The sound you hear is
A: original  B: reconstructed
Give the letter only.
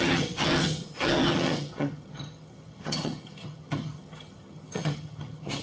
B